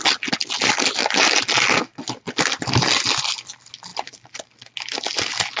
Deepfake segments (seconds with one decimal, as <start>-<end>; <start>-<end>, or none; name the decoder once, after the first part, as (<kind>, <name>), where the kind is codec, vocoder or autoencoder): none